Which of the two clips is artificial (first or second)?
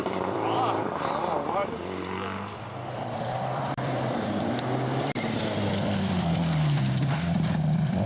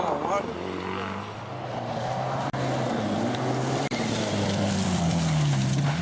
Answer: first